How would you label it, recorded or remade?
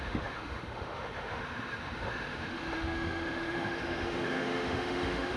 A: remade